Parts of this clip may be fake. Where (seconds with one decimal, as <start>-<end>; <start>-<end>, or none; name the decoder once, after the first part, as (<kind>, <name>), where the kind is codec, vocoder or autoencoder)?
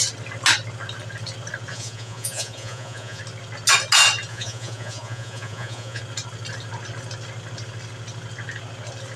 1.7-3.2 (vocoder, Vocos); 4.3-6.0